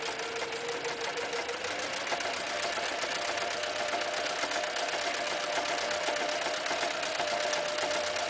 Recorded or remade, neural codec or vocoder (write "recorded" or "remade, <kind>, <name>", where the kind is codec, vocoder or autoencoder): recorded